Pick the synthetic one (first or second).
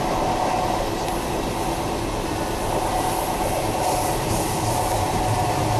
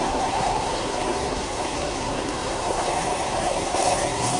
second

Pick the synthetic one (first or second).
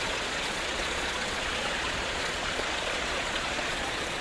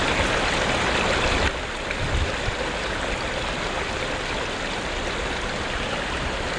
first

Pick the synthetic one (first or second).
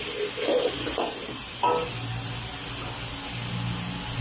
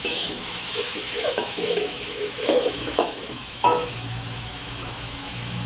second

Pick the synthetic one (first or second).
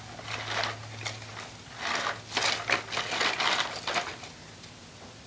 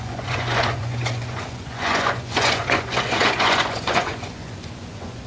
second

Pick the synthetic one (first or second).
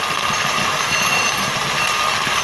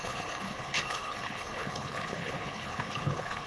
second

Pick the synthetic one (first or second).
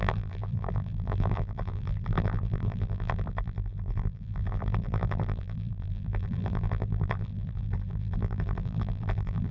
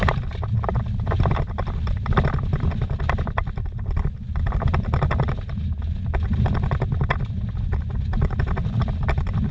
first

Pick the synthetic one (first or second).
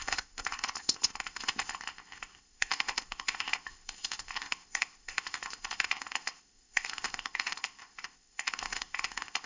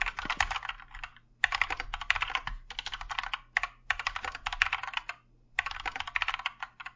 first